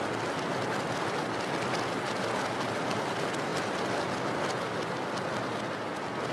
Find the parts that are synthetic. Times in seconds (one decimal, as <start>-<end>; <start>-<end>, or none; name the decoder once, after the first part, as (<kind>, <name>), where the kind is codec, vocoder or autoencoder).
none